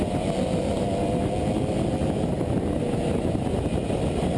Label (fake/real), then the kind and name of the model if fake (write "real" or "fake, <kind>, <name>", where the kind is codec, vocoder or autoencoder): real